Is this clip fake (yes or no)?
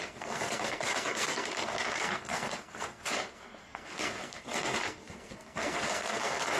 yes